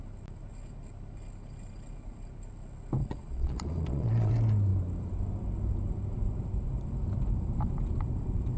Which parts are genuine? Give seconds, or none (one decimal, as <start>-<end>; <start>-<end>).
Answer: 0.0-3.0; 4.3-8.6

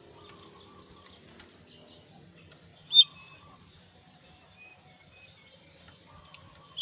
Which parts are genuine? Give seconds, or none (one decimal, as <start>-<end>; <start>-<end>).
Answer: 0.0-2.7; 6.0-6.8

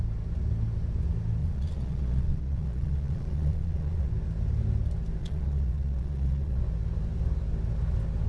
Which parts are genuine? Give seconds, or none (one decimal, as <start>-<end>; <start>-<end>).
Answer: 0.0-1.4; 4.1-5.2; 6.6-8.3

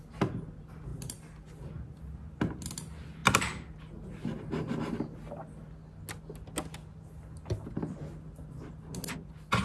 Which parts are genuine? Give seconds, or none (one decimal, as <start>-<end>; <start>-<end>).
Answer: 0.0-9.6

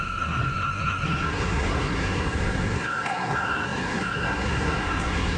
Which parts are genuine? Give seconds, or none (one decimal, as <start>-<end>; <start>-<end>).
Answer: none

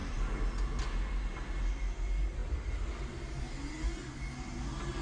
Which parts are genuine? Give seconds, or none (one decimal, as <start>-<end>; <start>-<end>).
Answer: 0.0-5.0

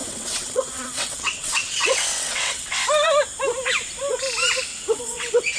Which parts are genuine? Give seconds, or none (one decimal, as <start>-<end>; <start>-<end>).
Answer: 2.7-4.7